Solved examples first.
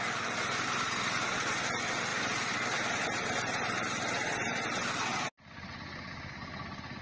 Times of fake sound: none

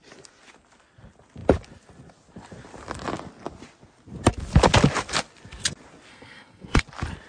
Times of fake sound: 6.1-6.8 (codec, SNAC)

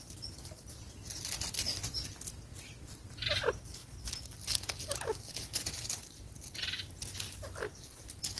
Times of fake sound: none

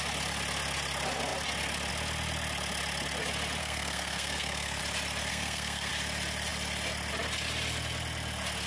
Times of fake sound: 3.6-4.8 (codec, SNAC); 5.3-5.9

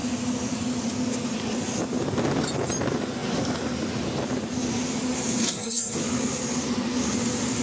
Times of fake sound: 5.4-6.0 (codec, SNAC)

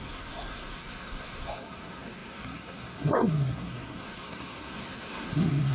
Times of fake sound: 0.0-5.7 (codec, SNAC)

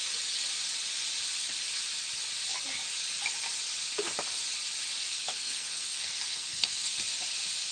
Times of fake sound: 5.0-7.0 (codec, SNAC)